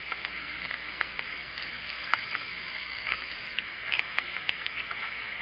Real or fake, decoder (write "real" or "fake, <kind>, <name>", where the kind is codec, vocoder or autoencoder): fake, codec, SNAC